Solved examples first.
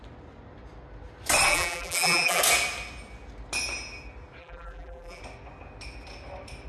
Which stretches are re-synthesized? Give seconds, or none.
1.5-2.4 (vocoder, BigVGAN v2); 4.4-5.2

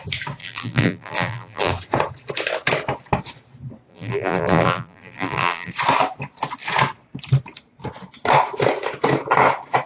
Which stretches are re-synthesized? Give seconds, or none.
0.4-1.7 (vocoder, BigVGAN v2); 3.9-5.7

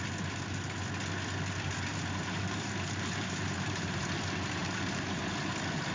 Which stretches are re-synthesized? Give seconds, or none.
1.9-4.0 (vocoder, BigVGAN v2); 4.6-5.2

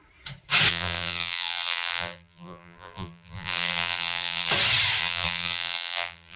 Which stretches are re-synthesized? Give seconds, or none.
0.7-4.5 (vocoder, BigVGAN v2); 5.0-6.4